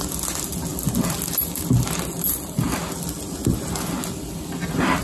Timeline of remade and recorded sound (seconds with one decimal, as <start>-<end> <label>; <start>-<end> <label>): 0.0-5.0 recorded